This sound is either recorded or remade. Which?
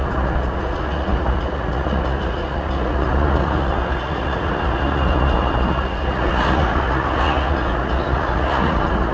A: remade